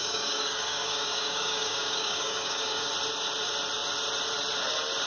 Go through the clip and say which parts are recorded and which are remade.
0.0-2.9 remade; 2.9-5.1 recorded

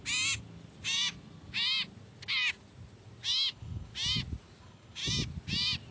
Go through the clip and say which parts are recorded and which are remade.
0.0-3.5 recorded; 3.5-3.9 remade; 3.9-4.6 recorded; 4.6-5.0 remade; 5.0-5.9 recorded

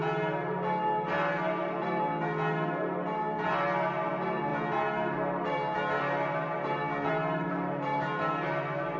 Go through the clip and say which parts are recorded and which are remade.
0.0-9.0 recorded

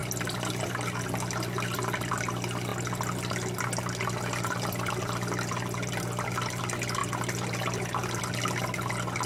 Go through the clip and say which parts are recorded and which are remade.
0.0-9.3 recorded